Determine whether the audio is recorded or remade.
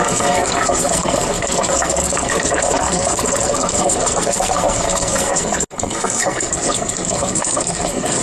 remade